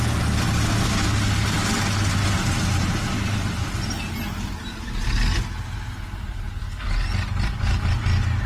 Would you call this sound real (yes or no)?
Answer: yes